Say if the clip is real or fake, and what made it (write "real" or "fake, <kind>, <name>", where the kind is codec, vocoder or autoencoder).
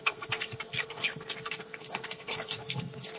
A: fake, codec, SNAC